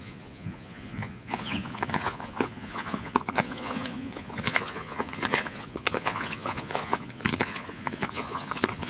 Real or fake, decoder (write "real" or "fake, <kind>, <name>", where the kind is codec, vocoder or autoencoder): fake, vocoder, Vocos